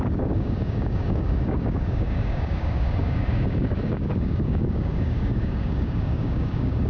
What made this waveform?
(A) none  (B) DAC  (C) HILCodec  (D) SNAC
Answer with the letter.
B